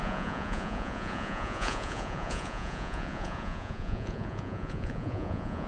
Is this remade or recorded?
remade